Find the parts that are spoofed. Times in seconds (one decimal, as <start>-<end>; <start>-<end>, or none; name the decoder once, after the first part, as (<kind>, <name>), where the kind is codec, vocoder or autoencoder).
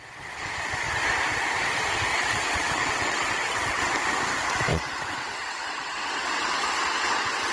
2.1-3.9 (vocoder, WaveNeXt); 4.7-7.5